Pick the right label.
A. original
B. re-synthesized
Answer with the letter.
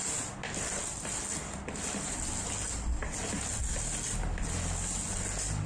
A